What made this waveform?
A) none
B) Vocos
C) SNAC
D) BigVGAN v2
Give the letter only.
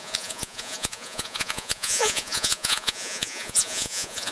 B